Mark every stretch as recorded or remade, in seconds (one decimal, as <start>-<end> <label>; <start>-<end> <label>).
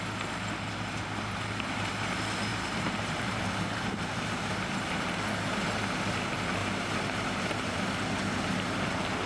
0.0-2.5 recorded; 2.5-3.5 remade; 3.5-6.6 recorded; 6.6-7.9 remade; 7.9-9.3 recorded